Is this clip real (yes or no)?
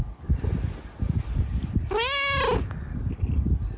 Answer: yes